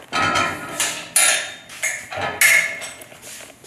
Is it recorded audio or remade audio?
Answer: recorded